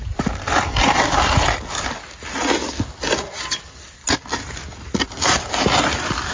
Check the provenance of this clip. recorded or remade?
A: recorded